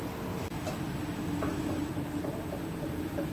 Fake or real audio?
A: real